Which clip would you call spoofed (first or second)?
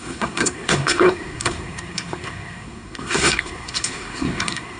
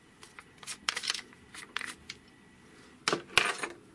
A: first